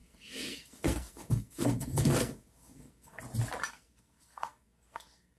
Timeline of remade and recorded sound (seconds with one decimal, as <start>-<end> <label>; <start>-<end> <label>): 0.0-3.2 remade; 3.2-3.7 recorded; 3.7-5.4 remade